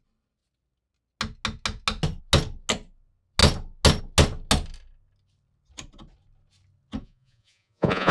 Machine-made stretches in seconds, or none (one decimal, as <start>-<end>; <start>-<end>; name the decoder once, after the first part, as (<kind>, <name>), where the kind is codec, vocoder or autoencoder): 7.0-8.1 (vocoder, Vocos)